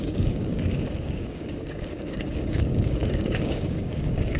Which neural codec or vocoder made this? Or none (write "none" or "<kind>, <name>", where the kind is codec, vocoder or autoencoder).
codec, DAC